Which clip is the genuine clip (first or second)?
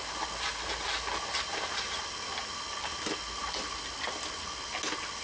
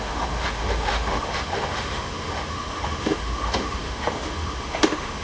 first